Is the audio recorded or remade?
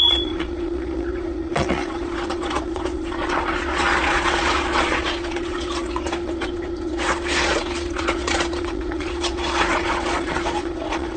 remade